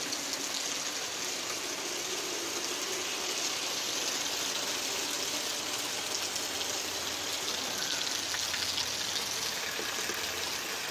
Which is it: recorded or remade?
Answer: recorded